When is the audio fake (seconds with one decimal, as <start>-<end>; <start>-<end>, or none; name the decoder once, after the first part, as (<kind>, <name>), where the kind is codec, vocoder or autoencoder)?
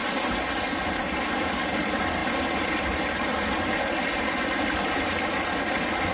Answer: none